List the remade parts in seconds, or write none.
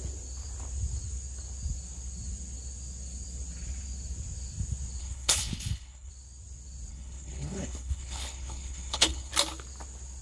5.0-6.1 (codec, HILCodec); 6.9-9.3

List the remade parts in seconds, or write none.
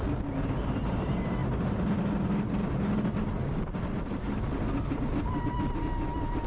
none